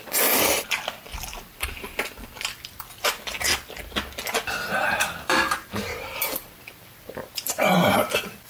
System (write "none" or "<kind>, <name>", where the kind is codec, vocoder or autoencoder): vocoder, BigVGAN v2